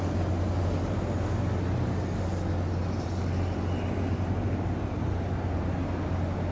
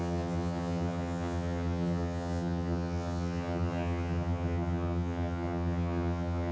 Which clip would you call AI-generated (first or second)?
second